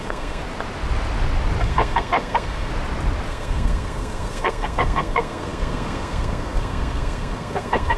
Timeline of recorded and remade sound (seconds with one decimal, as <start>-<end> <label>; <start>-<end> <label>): 0.0-0.4 remade; 0.4-1.6 recorded; 1.6-2.7 remade; 2.7-3.3 recorded; 3.3-8.0 remade